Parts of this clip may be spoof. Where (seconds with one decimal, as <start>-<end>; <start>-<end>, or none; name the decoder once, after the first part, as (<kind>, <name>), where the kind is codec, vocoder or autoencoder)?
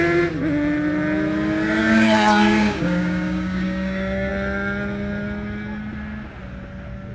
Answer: 1.8-4.3 (codec, DAC)